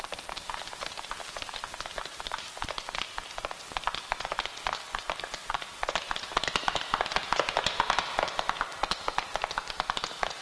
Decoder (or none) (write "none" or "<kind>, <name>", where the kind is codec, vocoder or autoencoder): none